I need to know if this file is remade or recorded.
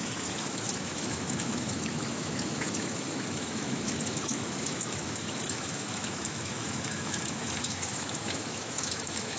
remade